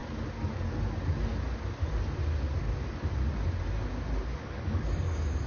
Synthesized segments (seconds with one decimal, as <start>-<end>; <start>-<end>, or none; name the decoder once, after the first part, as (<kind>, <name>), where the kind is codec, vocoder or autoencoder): 4.4-5.5 (codec, DAC)